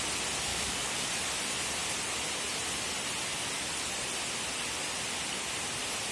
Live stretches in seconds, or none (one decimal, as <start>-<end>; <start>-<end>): 0.0-0.5; 1.1-6.1